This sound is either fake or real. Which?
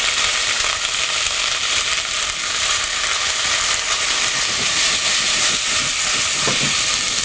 real